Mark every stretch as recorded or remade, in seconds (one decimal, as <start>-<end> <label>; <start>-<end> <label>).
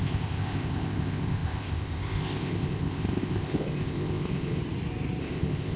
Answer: 0.0-4.6 remade; 4.6-5.2 recorded; 5.2-5.8 remade